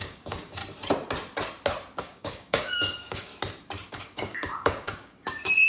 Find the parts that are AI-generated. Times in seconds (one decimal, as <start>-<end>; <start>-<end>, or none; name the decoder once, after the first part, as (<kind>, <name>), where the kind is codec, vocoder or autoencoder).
0.0-0.6 (codec, DAC); 2.0-3.3; 3.9-5.7